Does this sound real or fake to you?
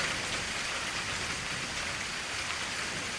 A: real